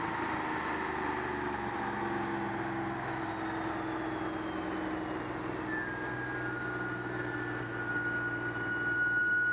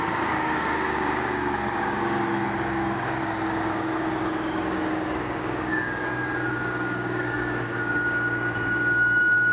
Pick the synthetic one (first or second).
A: second